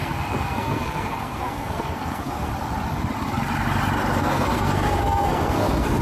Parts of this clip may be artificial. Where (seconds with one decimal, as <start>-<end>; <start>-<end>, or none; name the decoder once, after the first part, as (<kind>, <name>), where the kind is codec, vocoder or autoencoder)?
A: 0.0-2.5 (codec, SNAC); 4.2-6.0